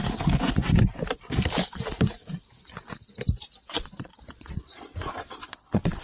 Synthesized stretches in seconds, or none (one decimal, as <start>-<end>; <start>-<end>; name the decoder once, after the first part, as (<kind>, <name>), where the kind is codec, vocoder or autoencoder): 3.6-6.0 (vocoder, Vocos)